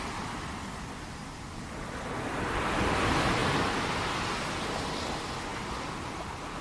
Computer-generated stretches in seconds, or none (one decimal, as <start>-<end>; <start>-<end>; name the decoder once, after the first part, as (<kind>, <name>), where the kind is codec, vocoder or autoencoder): 3.4-4.0 (vocoder, BigVGAN v2)